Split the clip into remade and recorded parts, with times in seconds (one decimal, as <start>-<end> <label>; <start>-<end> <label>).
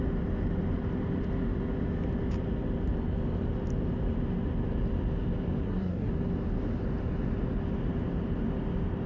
0.0-5.6 recorded; 5.6-6.1 remade; 6.1-9.1 recorded